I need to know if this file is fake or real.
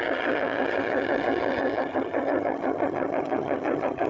fake